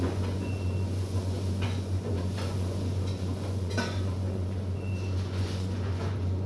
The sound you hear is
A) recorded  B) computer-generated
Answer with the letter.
B